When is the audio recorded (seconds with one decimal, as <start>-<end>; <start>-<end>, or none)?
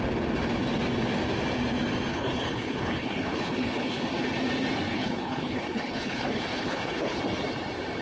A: 0.0-2.1; 4.0-4.9; 7.2-8.0